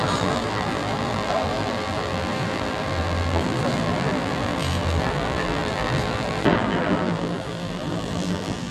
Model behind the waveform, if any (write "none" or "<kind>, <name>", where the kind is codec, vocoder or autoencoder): vocoder, BigVGAN v2